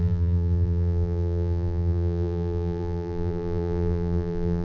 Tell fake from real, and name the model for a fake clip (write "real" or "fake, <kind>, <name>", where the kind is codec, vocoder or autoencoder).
fake, vocoder, BigVGAN v2